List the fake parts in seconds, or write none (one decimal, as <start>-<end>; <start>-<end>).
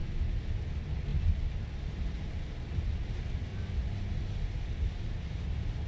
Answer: 0.0-3.5; 4.9-5.9